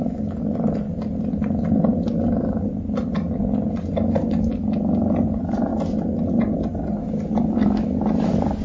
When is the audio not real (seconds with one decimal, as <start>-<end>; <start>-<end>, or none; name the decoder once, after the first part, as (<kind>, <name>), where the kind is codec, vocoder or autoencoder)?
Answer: none